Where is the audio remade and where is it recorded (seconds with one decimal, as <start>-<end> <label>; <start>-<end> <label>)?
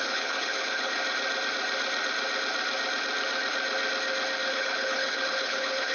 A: 0.0-1.0 remade; 1.0-4.5 recorded; 4.5-5.9 remade